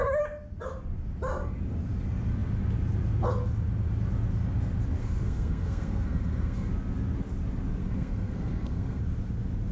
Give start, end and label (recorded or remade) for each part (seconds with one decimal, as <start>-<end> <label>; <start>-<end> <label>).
0.0-5.0 recorded; 5.0-6.7 remade; 6.7-7.8 recorded; 7.8-9.0 remade; 9.0-9.7 recorded